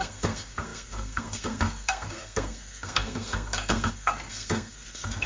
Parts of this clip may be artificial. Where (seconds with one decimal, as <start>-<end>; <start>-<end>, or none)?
0.0-5.3